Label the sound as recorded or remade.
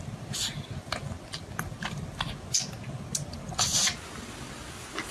recorded